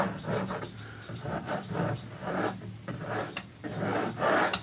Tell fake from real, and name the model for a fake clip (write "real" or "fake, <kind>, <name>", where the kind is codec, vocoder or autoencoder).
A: real